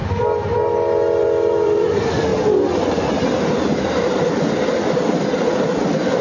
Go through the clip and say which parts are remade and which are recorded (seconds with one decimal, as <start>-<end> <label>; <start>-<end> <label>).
0.0-1.2 recorded; 1.2-2.3 remade; 2.3-3.1 recorded; 3.1-6.2 remade

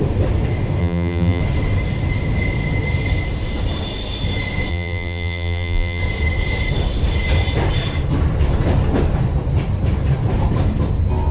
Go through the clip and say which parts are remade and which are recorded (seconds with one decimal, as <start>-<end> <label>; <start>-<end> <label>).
0.0-0.8 recorded; 0.8-1.4 remade; 1.4-4.7 recorded; 4.7-6.0 remade; 6.0-11.3 recorded

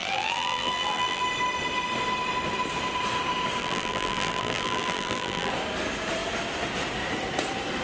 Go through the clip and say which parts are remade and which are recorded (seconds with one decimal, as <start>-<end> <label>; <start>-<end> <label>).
0.0-1.2 remade; 1.2-3.6 recorded; 3.6-5.5 remade; 5.5-7.8 recorded

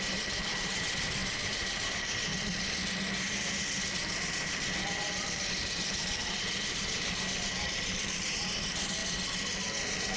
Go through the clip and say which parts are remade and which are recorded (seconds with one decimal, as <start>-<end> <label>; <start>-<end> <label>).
0.0-2.3 remade; 2.3-4.3 recorded; 4.3-9.0 remade; 9.0-10.2 recorded

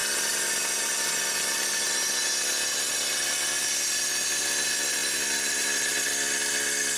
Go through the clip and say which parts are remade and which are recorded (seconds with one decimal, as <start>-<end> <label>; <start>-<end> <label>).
0.0-7.0 recorded

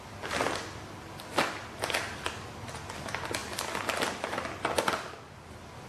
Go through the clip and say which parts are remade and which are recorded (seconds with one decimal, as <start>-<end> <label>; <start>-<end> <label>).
0.0-5.9 recorded